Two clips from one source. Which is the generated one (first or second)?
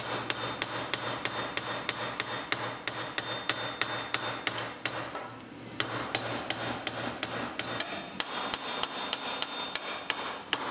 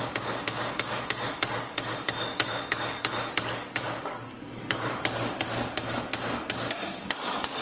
second